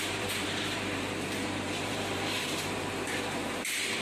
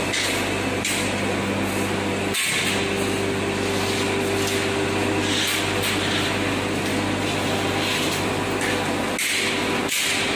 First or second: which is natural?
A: second